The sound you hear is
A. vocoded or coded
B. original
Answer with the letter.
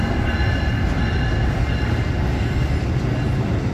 B